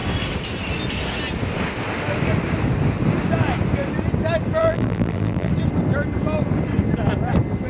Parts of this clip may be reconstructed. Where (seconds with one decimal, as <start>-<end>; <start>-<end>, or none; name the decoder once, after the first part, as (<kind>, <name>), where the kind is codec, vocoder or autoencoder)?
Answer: 4.6-5.5 (vocoder, BigVGAN v2)